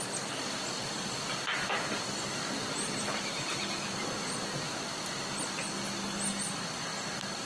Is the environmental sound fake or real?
real